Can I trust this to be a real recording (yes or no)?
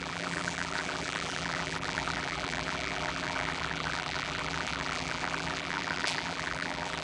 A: no